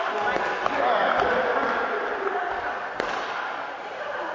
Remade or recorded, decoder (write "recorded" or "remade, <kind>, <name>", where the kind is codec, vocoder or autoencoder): recorded